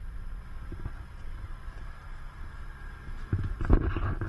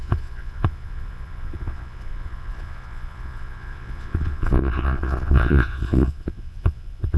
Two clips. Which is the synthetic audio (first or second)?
second